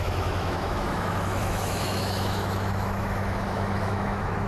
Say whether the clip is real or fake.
fake